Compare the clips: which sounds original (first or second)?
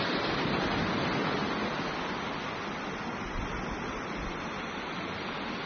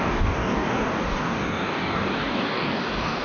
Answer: first